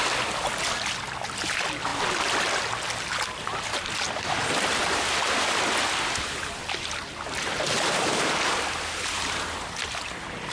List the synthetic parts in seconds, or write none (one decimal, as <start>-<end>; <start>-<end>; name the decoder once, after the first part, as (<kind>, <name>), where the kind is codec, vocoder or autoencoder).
none